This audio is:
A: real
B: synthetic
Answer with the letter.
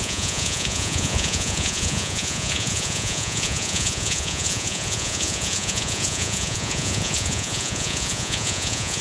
B